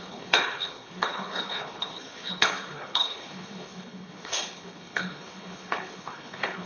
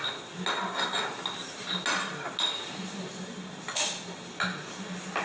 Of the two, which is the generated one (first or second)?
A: first